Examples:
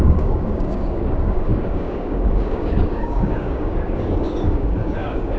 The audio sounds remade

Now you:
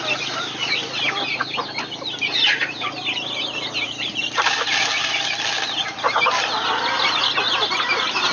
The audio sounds recorded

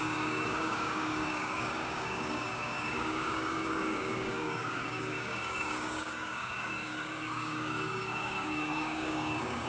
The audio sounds remade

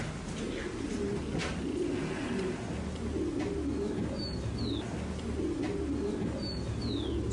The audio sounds recorded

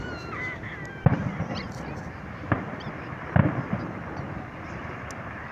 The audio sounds recorded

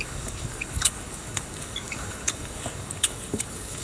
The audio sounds remade